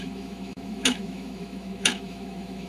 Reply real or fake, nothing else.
fake